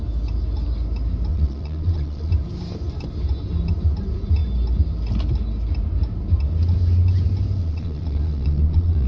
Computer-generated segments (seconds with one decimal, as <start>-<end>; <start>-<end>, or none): 1.3-2.3; 7.6-9.1